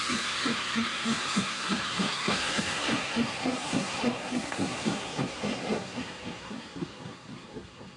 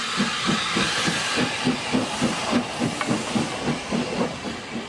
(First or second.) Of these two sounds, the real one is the second